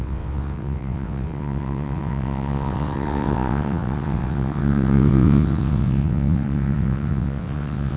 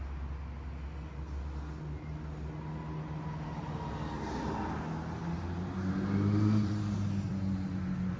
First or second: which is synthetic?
first